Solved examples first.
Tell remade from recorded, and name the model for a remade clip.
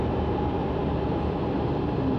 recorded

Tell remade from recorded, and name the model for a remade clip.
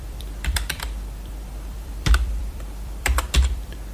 remade, vocoder, BigVGAN v2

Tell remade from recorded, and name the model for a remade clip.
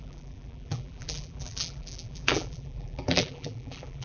remade, vocoder, BigVGAN v2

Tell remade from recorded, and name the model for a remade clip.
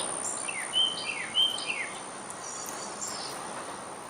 recorded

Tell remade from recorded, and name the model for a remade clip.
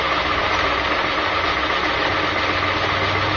recorded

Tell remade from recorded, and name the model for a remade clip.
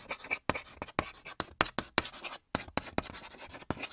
recorded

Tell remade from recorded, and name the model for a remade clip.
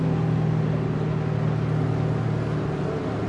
recorded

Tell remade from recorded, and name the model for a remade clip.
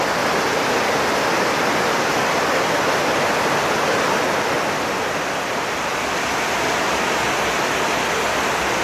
recorded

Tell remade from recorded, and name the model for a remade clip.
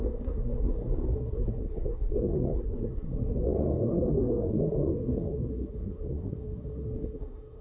remade, codec, SNAC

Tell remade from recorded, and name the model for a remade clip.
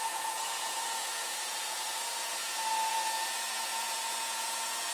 remade, vocoder, Vocos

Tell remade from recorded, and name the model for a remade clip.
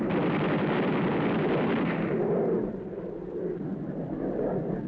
recorded